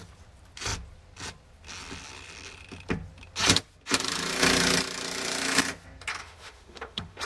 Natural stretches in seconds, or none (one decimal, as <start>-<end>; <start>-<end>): 0.0-6.2